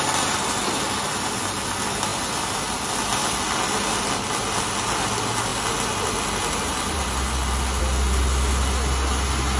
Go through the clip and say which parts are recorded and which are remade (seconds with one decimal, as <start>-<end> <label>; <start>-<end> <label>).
0.0-9.6 recorded